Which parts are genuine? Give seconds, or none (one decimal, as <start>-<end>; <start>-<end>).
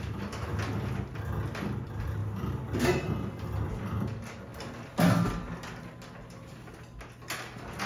0.0-7.9